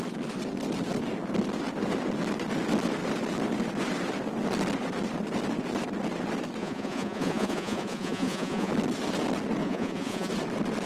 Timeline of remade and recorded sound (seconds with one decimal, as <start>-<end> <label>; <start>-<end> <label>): 0.0-6.6 recorded; 6.6-8.7 remade; 8.7-9.6 recorded; 9.6-10.3 remade; 10.3-10.9 recorded